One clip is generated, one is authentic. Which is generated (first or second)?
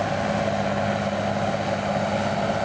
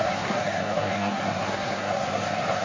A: second